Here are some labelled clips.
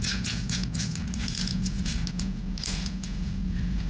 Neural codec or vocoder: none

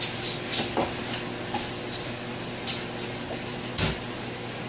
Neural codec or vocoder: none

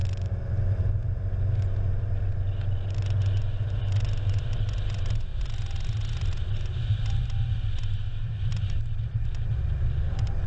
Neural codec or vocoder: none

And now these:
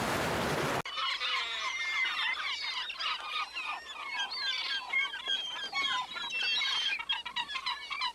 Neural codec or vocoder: none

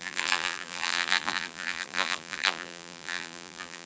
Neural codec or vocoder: vocoder, BigVGAN v2